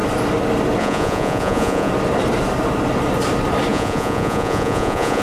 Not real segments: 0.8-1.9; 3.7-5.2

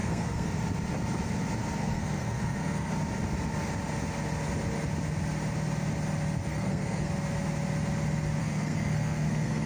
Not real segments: 0.0-0.5; 1.8-2.9; 6.5-7.1; 8.4-9.7

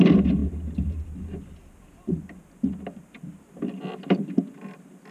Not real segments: none

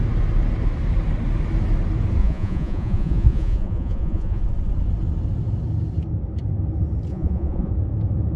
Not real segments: 2.2-4.4; 7.1-7.7